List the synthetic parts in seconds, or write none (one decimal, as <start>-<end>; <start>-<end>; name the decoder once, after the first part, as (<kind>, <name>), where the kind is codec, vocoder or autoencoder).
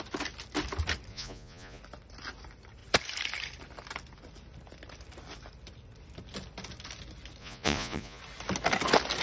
1.1-1.8 (vocoder, Vocos); 7.4-8.2